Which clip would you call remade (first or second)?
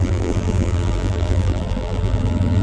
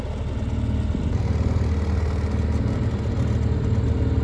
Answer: first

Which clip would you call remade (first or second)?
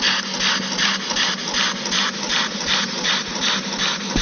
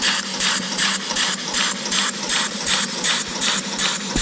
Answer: second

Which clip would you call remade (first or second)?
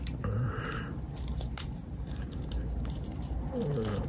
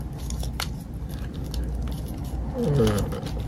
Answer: first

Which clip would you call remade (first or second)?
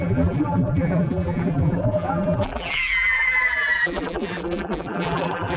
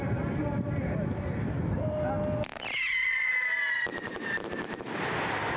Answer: first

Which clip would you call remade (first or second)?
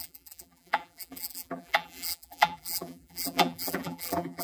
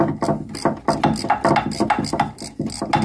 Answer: first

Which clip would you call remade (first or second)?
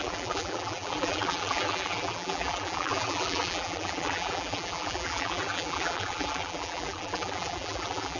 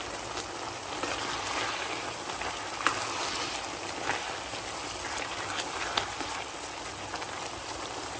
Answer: first